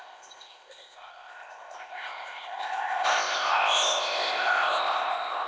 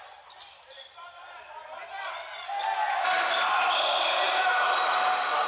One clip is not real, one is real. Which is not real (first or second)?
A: first